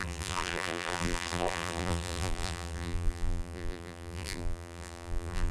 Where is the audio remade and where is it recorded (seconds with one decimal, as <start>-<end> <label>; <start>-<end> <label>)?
0.0-5.5 remade